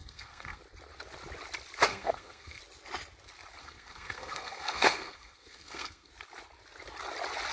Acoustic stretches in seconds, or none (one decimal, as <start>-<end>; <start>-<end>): 0.6-1.9; 2.6-3.6; 6.1-7.5